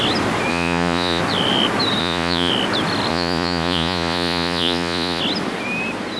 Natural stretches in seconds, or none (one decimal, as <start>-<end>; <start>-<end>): 0.0-0.5; 1.2-2.0; 2.5-3.1; 5.2-6.2